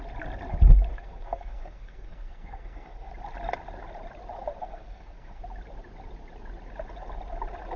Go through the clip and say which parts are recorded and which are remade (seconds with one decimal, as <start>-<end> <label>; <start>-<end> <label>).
0.0-0.9 recorded; 0.9-3.1 remade; 3.1-4.6 recorded; 4.6-5.4 remade; 5.4-7.8 recorded